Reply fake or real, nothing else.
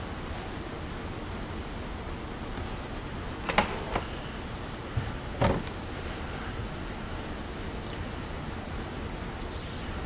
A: real